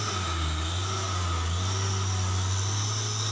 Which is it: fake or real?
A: real